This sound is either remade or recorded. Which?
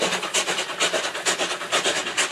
recorded